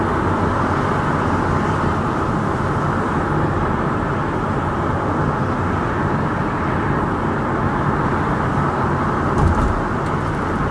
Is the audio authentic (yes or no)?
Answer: yes